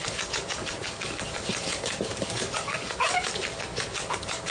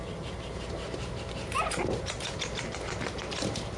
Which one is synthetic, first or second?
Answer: first